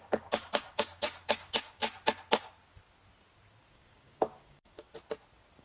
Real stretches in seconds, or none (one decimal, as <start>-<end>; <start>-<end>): 1.8-3.7; 4.9-5.6